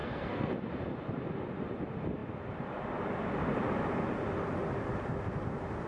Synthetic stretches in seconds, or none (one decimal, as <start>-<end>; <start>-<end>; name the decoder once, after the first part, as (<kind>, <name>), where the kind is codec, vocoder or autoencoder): 0.0-0.5 (codec, SNAC)